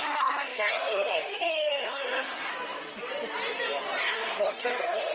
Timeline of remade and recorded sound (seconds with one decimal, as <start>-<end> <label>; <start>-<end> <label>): 0.0-2.5 remade; 2.5-4.0 recorded; 4.0-5.1 remade